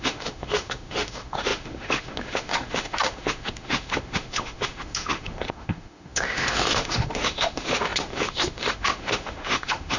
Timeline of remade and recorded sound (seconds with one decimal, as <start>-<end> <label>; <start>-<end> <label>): 0.0-10.0 remade